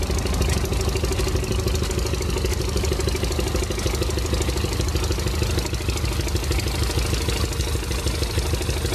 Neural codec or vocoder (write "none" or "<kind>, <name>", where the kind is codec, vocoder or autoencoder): none